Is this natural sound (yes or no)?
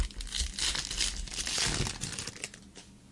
yes